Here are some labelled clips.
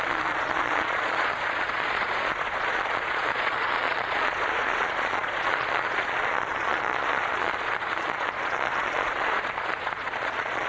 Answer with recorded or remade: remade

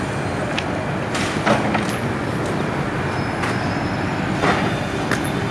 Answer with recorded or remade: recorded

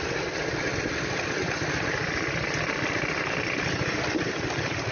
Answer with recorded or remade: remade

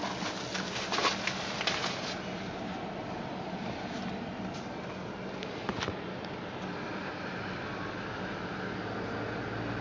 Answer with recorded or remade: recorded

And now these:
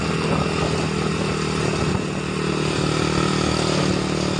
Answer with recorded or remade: recorded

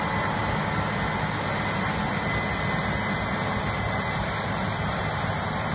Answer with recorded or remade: recorded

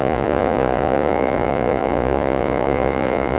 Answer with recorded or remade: remade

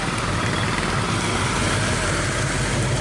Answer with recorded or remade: recorded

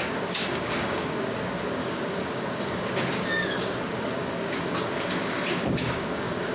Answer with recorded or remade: remade